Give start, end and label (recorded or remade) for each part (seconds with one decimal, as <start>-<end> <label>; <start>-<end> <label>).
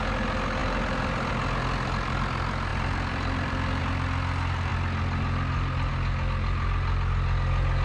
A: 0.0-0.6 recorded; 0.6-1.3 remade; 1.3-2.7 recorded; 2.7-3.8 remade; 3.8-7.8 recorded